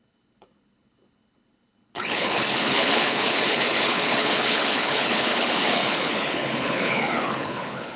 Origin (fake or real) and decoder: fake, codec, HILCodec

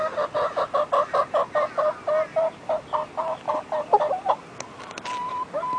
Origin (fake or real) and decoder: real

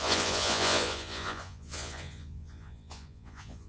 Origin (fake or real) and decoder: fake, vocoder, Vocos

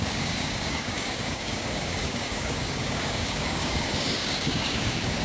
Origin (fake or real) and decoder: fake, codec, DAC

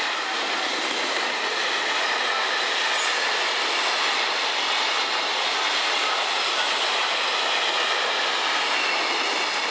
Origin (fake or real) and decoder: real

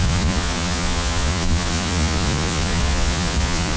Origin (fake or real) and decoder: fake, vocoder, Vocos